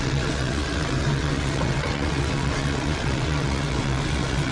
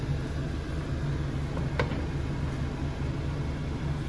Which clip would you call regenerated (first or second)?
first